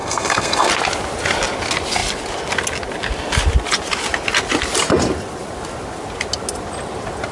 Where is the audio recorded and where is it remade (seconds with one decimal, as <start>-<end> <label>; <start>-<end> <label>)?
0.0-0.7 remade; 0.7-7.3 recorded